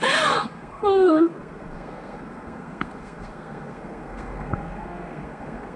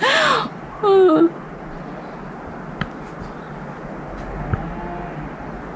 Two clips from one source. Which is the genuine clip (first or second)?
second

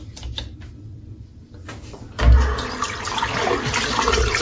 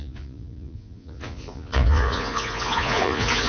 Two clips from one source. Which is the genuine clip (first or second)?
first